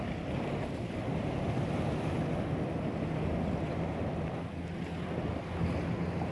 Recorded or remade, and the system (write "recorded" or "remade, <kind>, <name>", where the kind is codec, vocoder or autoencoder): recorded